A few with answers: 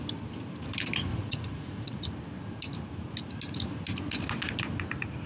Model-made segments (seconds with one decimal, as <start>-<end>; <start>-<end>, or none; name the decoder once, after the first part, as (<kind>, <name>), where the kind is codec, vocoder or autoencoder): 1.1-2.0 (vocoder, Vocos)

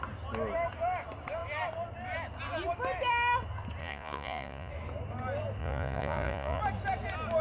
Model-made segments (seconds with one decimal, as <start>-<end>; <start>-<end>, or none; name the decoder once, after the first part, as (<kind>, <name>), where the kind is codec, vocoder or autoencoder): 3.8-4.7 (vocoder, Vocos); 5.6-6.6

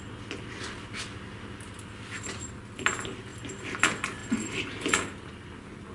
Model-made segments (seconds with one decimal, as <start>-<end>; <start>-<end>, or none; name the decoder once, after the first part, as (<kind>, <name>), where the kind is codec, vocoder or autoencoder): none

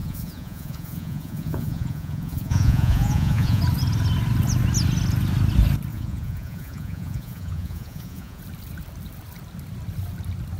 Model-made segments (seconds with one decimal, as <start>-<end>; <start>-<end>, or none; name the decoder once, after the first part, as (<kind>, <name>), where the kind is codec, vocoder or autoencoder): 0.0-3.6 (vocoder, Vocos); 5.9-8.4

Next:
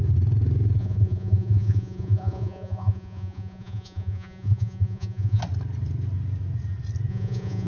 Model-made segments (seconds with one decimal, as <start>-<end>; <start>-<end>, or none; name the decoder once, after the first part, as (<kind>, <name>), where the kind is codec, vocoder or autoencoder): 0.8-5.4 (vocoder, Vocos); 7.1-7.7

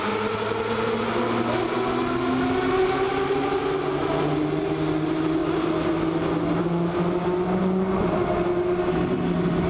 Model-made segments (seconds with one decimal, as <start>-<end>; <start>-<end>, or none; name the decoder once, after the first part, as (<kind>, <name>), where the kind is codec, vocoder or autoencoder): none